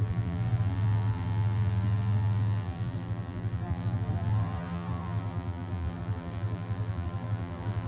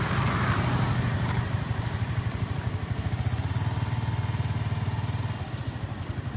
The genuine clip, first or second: second